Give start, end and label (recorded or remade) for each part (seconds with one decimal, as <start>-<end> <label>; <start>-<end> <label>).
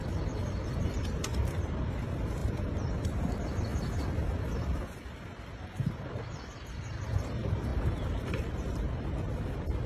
0.0-2.4 remade; 2.4-2.9 recorded; 2.9-3.7 remade; 3.7-5.1 recorded; 5.1-9.9 remade